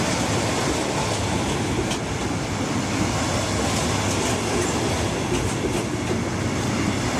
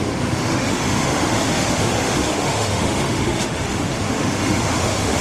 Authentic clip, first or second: first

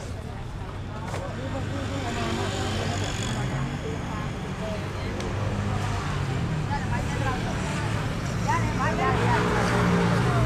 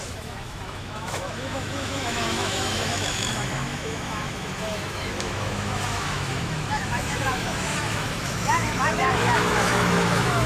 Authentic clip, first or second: first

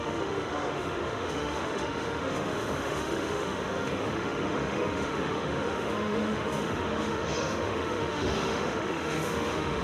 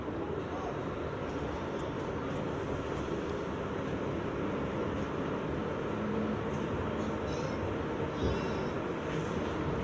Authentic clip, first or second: second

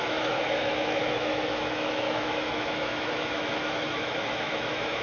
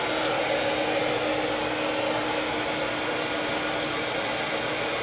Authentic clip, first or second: second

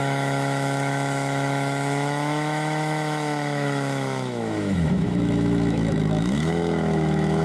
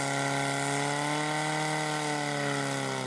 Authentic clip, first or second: second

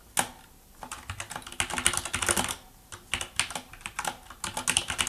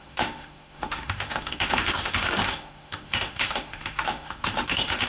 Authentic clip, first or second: first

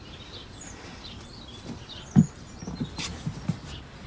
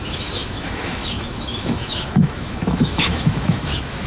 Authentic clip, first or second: first